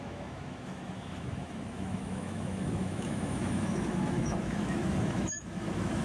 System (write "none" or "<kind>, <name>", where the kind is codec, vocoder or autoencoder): autoencoder, DAC-VAE